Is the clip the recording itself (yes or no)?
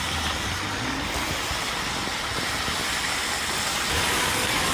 yes